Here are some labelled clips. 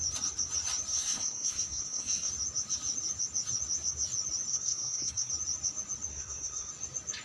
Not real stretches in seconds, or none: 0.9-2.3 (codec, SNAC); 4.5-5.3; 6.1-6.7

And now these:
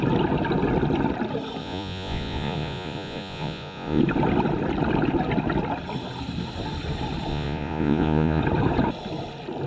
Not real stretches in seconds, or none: 1.6-4.0 (vocoder, Vocos); 7.3-8.4